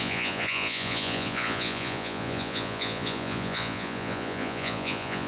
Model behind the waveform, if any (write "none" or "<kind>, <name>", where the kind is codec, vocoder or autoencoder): vocoder, Vocos